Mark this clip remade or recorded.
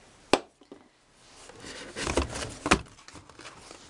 recorded